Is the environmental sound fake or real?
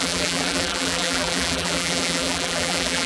fake